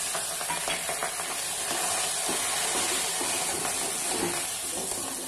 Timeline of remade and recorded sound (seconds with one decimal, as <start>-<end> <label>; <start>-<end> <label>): 0.0-5.3 recorded